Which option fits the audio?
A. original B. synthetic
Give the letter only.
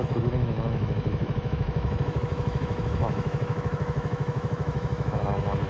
B